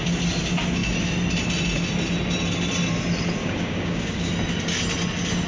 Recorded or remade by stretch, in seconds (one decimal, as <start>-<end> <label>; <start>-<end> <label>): 0.0-3.4 recorded; 3.4-4.3 remade; 4.3-5.5 recorded